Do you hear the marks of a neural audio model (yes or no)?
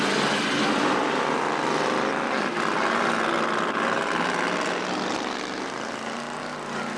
no